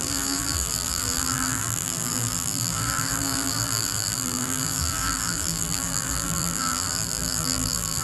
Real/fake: fake